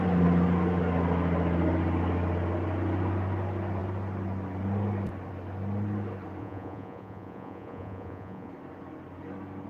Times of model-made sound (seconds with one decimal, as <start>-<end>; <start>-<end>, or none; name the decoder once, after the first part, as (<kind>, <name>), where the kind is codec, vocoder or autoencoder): 6.4-8.5 (vocoder, Vocos)

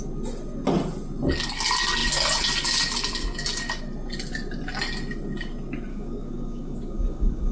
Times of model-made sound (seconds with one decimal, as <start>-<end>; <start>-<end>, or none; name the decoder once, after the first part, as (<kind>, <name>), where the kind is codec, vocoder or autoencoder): 5.9-7.5 (codec, DAC)

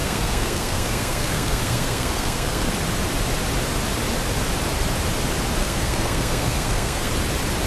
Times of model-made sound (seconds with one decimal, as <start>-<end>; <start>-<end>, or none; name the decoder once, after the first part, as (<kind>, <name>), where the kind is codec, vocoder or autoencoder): 0.0-2.7 (codec, SNAC); 5.6-7.1

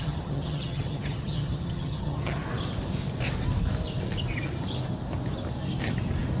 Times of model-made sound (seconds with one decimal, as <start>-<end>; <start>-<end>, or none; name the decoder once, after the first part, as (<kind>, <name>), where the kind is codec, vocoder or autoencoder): 0.0-2.4 (vocoder, HiFi-GAN)